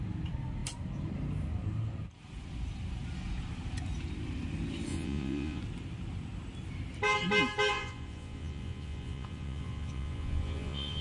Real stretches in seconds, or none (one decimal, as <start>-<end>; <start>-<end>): 0.0-4.9; 5.6-7.7